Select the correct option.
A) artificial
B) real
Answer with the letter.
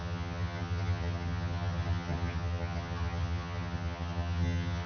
A